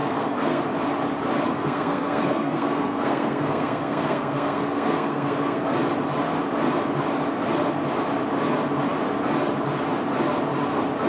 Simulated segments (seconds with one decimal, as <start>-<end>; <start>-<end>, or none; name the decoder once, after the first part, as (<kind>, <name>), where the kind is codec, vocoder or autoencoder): 0.0-0.6 (codec, SNAC); 1.5-5.6